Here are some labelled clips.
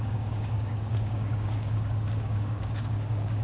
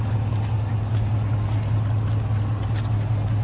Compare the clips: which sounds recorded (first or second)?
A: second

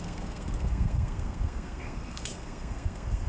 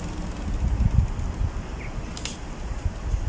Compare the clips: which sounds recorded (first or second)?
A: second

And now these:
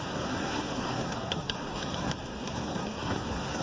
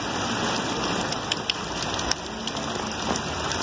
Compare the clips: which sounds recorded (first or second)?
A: second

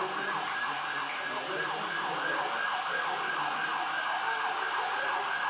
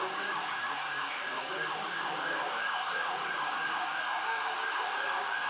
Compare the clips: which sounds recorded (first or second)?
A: first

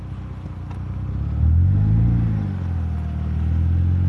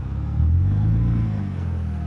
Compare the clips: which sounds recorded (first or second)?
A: first